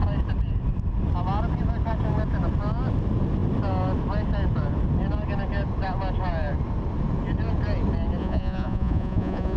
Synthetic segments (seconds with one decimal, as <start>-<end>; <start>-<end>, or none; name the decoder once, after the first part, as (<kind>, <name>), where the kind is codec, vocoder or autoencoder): 8.2-9.6 (vocoder, Vocos)

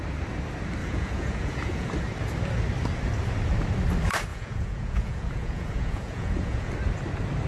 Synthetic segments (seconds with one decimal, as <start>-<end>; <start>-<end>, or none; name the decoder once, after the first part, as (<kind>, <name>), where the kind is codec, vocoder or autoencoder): 0.8-1.9 (vocoder, Vocos); 4.3-6.7

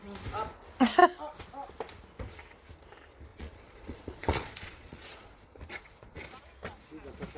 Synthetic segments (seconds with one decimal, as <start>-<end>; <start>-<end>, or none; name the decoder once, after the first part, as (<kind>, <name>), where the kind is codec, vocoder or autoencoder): 3.3-6.2 (vocoder, Vocos)